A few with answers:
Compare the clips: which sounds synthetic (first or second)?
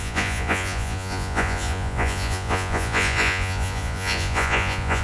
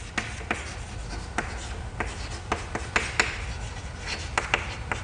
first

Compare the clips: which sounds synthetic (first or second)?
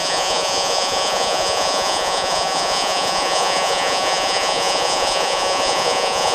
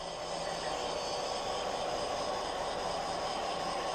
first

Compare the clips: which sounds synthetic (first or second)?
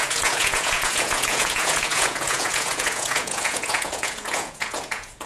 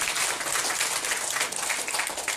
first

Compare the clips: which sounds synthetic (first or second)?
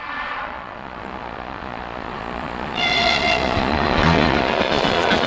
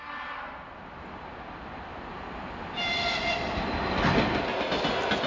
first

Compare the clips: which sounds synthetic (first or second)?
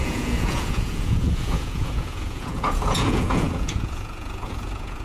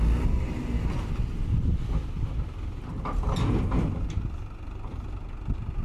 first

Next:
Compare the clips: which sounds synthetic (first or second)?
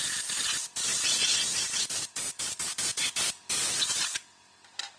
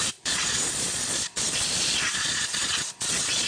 second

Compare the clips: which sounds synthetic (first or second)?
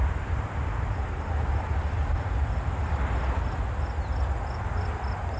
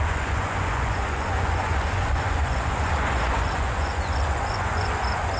second